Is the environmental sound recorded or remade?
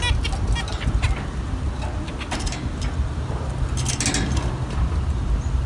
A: recorded